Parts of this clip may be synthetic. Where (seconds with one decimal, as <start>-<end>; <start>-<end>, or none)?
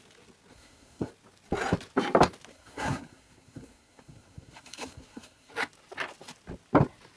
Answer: 0.5-1.1; 2.5-5.5